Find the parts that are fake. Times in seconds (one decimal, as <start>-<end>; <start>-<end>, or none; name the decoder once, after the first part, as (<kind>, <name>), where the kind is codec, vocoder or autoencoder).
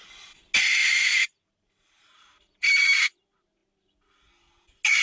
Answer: 0.8-3.0 (vocoder, BigVGAN v2)